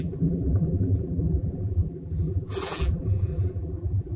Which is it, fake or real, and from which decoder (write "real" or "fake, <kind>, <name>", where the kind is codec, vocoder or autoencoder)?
fake, vocoder, BigVGAN v2